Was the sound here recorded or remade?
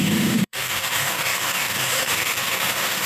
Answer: remade